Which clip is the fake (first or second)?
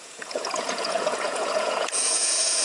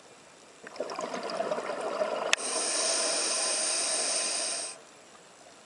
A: first